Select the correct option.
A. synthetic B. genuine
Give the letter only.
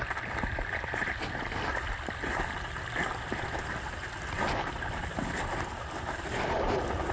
B